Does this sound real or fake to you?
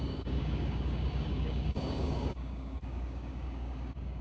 fake